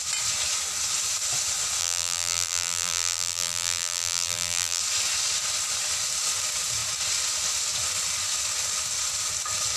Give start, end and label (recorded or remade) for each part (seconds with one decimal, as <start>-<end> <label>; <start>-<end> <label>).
0.0-1.8 recorded; 1.8-4.8 remade; 4.8-9.8 recorded